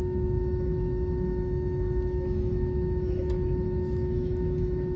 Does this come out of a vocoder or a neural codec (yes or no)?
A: yes